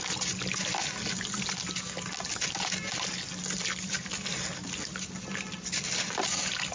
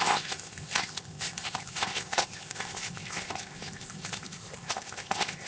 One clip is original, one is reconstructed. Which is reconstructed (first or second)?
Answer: second